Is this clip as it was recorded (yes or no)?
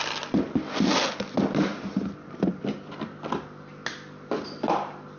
yes